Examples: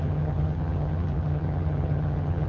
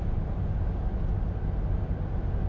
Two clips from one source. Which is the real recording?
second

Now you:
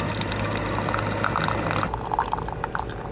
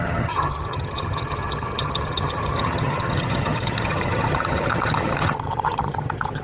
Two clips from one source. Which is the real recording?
first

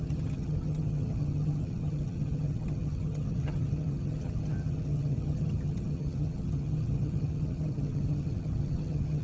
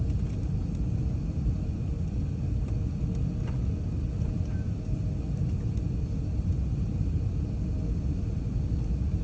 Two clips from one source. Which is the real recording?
second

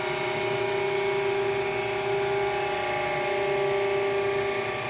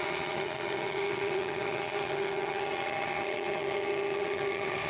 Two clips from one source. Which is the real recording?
first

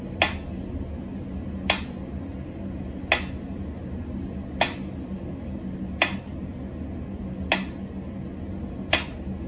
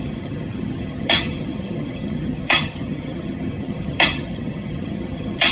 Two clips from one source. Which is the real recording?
first